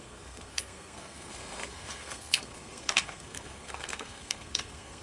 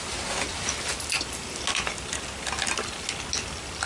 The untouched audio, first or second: second